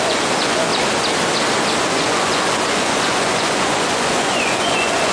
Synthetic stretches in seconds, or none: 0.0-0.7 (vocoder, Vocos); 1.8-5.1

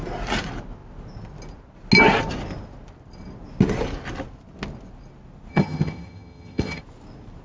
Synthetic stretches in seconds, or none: 5.5-6.8 (vocoder, HiFi-GAN)

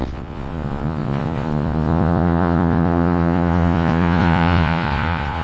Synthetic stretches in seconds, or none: 0.0-5.4 (vocoder, Vocos)

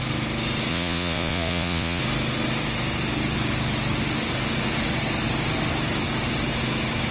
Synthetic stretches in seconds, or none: 0.7-2.0 (vocoder, Vocos)